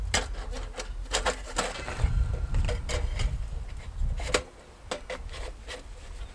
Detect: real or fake real